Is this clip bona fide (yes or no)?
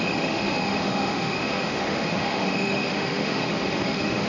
no